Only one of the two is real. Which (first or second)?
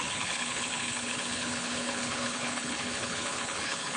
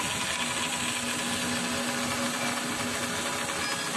second